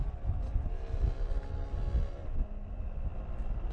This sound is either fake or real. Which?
real